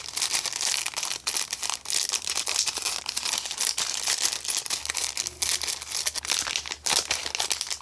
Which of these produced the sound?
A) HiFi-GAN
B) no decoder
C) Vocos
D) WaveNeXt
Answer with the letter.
B